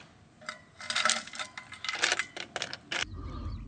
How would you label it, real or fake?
real